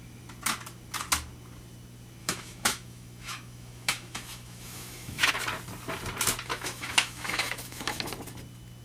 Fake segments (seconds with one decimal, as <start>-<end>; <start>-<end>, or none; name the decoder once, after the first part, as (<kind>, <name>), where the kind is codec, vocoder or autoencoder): 2.2-5.3 (autoencoder, DAC-VAE); 6.5-8.1